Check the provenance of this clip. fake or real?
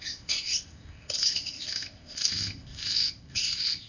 fake